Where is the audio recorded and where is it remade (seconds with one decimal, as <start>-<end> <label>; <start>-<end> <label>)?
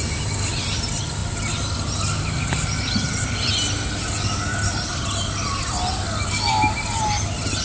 0.0-7.6 recorded